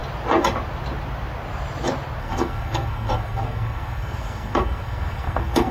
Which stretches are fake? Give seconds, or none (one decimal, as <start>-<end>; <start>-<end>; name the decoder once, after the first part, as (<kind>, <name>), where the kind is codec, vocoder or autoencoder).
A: 2.2-5.7 (codec, SNAC)